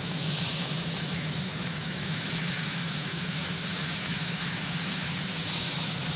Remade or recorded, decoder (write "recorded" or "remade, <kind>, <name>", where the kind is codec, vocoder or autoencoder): remade, autoencoder, DAC-VAE